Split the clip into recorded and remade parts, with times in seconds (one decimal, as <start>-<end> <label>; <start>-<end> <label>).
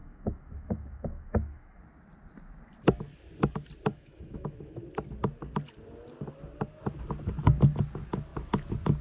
0.0-1.8 remade; 1.8-3.9 recorded; 3.9-4.8 remade; 4.8-9.0 recorded